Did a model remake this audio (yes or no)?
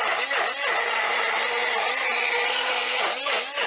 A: no